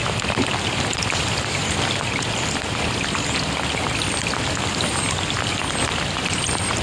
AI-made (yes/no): yes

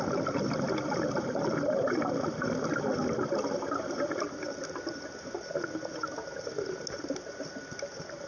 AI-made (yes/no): no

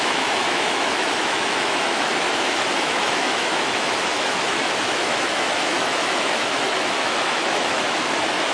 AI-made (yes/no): yes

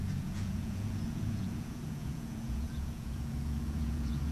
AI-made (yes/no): yes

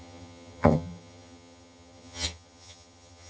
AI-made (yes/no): yes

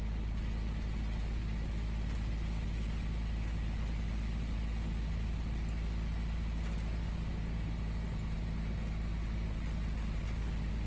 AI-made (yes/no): no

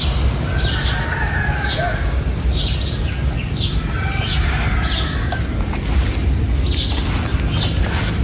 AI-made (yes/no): no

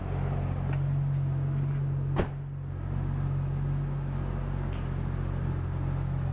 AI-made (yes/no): no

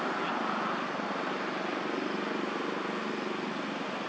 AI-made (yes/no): no